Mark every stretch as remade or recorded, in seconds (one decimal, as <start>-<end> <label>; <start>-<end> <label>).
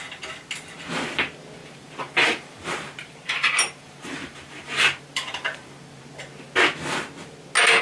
0.0-1.6 recorded; 1.6-6.0 remade; 6.0-7.8 recorded